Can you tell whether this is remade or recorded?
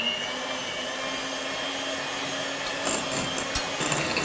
recorded